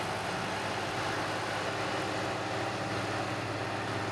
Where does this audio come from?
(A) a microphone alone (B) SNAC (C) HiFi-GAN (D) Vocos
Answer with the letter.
A